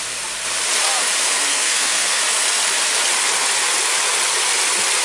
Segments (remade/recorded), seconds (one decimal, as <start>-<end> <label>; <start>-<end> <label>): 0.0-1.5 recorded; 1.5-2.2 remade; 2.2-5.0 recorded